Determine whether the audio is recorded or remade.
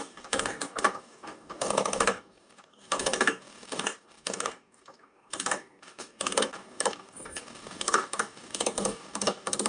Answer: remade